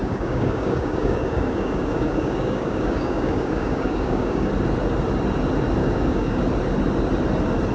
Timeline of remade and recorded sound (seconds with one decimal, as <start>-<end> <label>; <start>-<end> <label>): 0.0-4.5 remade; 4.5-5.8 recorded; 5.8-6.4 remade; 6.4-7.7 recorded